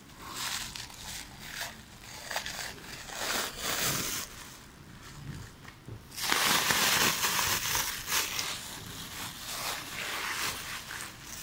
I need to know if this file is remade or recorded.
recorded